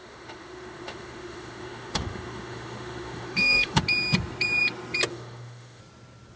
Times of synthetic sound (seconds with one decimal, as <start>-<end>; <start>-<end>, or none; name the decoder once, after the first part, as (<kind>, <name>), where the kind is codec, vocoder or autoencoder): 0.0-3.8 (autoencoder, DAC-VAE); 5.1-5.8